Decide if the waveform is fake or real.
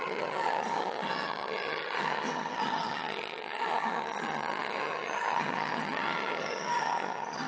fake